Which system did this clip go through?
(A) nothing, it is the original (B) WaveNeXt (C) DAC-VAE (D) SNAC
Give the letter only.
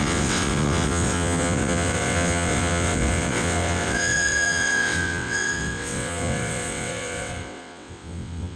B